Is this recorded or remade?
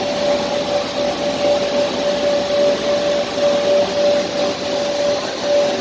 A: recorded